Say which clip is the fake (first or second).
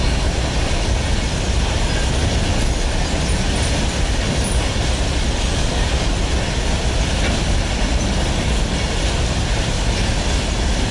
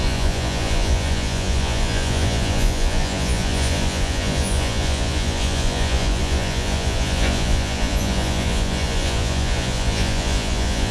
second